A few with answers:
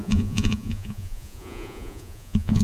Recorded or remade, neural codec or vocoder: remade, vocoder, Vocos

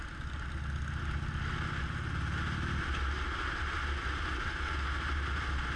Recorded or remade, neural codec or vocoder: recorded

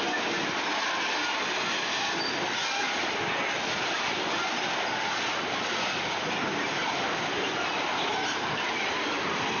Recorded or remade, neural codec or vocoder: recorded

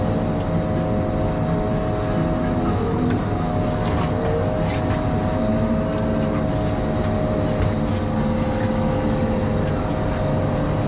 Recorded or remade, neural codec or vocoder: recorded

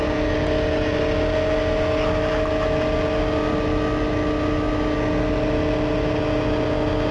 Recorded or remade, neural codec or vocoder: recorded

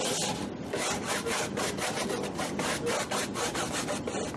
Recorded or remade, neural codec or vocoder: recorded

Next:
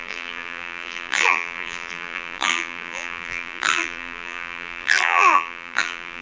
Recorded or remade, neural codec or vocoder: remade, vocoder, BigVGAN v2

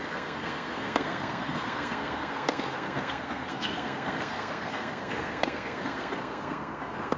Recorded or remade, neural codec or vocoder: remade, codec, SNAC